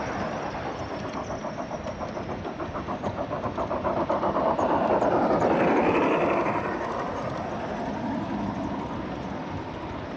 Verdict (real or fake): real